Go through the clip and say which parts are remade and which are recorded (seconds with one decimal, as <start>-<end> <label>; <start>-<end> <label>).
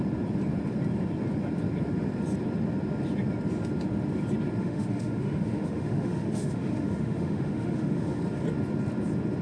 0.0-4.6 recorded; 4.6-8.2 remade; 8.2-9.4 recorded